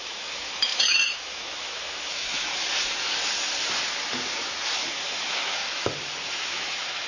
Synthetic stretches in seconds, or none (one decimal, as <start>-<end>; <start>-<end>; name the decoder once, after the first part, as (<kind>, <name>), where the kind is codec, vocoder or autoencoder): 0.0-2.5 (autoencoder, DAC-VAE); 4.9-5.6; 6.3-7.1